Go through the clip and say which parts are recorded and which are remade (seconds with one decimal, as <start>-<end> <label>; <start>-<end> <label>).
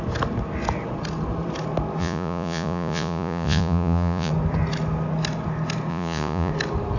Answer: 0.0-2.0 recorded; 2.0-4.3 remade; 4.3-5.9 recorded; 5.9-6.5 remade; 6.5-7.0 recorded